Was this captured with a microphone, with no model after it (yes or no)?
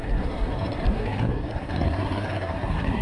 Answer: no